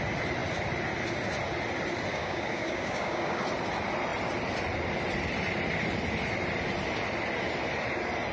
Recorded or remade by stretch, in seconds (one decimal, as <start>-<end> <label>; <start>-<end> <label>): 0.0-2.1 recorded; 2.1-3.4 remade; 3.4-8.3 recorded